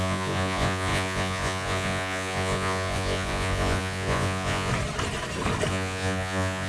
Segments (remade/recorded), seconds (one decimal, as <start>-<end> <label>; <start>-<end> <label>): 0.0-4.7 remade; 4.7-5.7 recorded; 5.7-6.7 remade